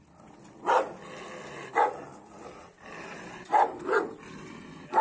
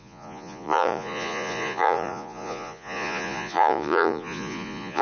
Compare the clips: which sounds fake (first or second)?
second